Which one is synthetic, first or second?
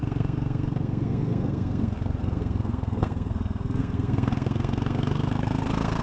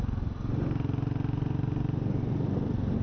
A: first